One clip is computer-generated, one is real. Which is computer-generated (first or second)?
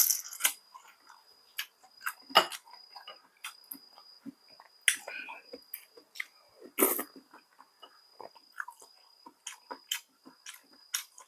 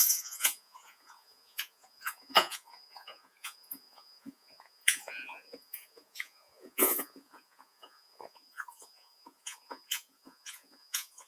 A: second